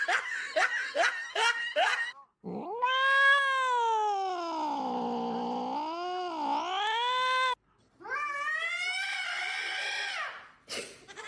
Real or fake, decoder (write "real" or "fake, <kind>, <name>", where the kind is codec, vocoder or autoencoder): real